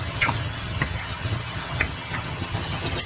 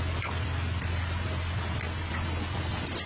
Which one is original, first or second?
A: second